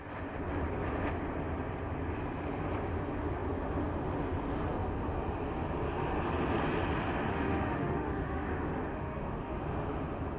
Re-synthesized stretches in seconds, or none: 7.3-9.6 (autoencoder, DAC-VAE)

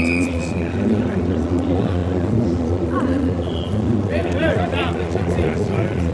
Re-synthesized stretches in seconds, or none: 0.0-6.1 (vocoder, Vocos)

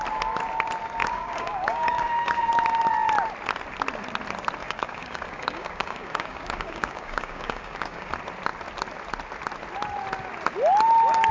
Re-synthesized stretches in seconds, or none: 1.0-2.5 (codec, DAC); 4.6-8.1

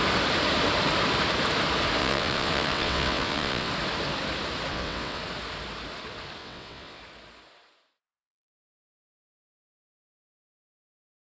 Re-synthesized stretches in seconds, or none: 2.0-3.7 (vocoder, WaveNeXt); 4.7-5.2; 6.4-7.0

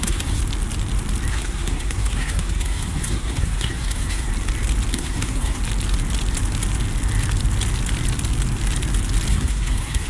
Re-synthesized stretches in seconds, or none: 0.0-0.4 (codec, SNAC); 1.3-4.3; 4.9-5.6; 9.3-10.1

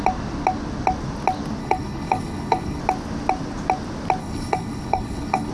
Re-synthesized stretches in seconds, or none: 1.6-2.8 (codec, HILCodec); 4.2-5.5

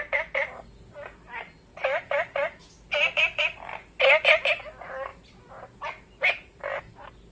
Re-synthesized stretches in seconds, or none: none

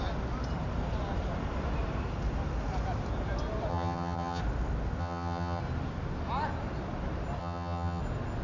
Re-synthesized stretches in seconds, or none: 3.7-4.4 (vocoder, HiFi-GAN); 5.0-5.6; 7.4-8.0